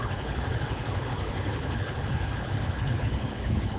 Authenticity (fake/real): fake